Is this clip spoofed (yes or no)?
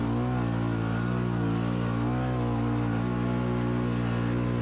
no